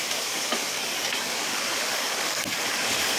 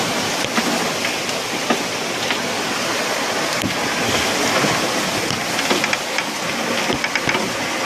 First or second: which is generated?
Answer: first